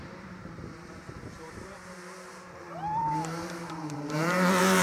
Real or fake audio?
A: fake